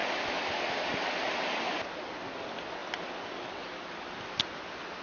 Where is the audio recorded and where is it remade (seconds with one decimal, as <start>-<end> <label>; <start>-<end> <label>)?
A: 0.0-5.0 recorded